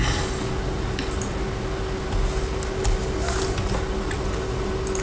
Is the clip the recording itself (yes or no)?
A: yes